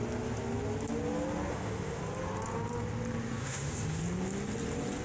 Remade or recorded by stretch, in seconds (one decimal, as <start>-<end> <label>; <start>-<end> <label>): 0.0-1.5 recorded; 1.5-2.0 remade; 2.0-3.4 recorded; 3.4-4.0 remade; 4.0-5.0 recorded